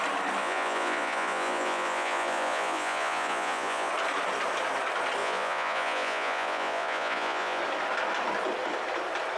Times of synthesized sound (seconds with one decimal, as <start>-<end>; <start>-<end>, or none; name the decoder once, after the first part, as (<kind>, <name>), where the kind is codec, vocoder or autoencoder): 0.4-3.9 (vocoder, Vocos); 5.2-7.6

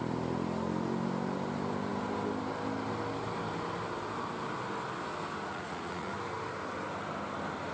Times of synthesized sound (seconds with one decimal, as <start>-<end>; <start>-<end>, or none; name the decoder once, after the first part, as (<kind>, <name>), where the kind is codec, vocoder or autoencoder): 5.5-6.1 (vocoder, Vocos)